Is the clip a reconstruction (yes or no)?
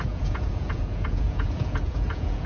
yes